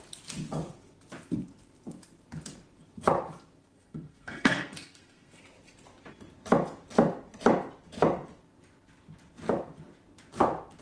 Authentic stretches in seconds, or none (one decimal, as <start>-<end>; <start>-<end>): 0.0-3.6; 5.4-10.8